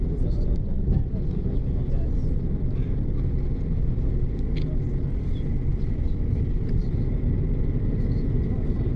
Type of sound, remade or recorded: recorded